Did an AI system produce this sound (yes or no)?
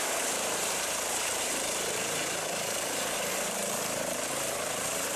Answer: yes